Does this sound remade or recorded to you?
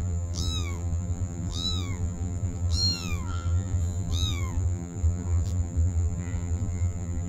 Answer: remade